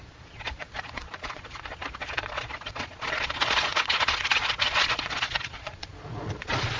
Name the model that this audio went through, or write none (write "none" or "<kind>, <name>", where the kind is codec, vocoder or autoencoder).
vocoder, Vocos